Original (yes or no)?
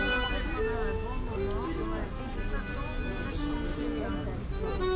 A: yes